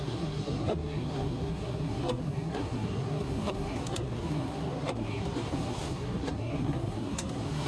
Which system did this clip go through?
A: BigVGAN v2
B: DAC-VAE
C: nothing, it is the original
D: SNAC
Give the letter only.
D